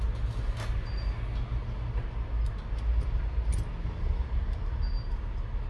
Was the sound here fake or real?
real